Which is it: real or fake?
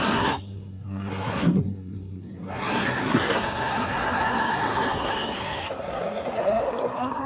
fake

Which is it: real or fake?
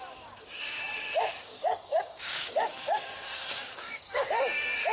fake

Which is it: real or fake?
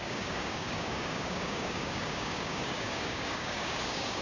fake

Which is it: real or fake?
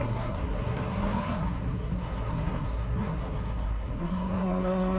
fake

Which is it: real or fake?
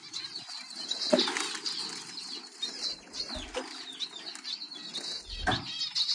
real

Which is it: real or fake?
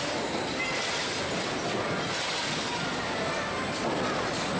real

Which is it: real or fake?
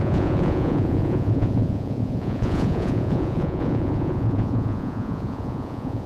fake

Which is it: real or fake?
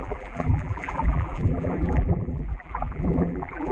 fake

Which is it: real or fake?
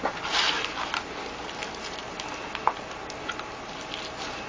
real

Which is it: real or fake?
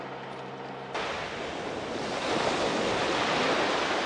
real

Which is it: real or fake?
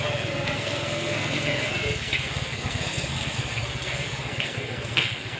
fake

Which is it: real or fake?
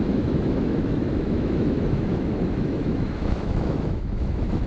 fake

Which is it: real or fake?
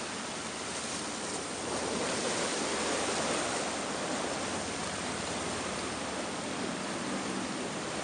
fake